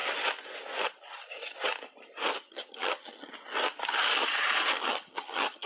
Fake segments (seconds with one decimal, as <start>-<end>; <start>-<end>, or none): 2.3-3.3; 4.7-5.7